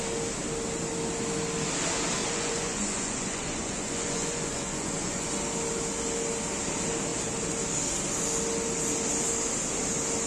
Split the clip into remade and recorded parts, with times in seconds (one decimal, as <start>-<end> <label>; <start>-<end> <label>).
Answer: 0.0-2.2 recorded; 2.2-5.3 remade; 5.3-10.3 recorded